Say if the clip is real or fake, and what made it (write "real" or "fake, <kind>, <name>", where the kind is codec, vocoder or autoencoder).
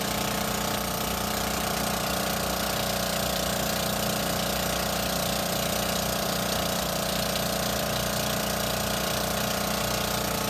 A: real